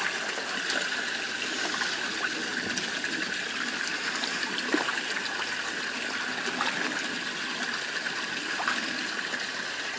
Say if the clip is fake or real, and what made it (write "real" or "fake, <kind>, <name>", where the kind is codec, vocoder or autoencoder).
real